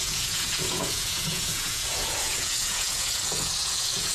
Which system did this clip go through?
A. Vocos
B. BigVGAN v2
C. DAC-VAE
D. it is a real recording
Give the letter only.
A